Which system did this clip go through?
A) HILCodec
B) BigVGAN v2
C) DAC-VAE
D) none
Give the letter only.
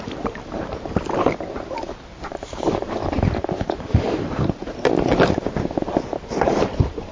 B